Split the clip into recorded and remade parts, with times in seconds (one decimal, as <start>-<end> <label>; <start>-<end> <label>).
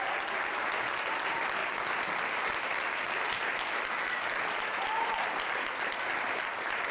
0.0-6.9 recorded